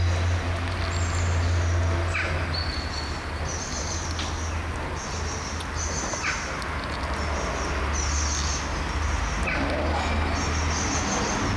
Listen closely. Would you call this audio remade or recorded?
recorded